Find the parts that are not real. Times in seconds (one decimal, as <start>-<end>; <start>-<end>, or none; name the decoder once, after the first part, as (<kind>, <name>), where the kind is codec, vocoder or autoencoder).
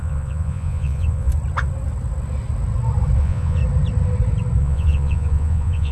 0.0-1.3 (vocoder, Vocos); 3.2-3.6; 4.6-5.9